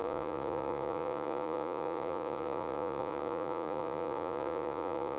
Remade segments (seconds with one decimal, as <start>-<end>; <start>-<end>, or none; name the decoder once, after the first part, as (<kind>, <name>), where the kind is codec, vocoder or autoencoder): 0.0-5.2 (vocoder, Vocos)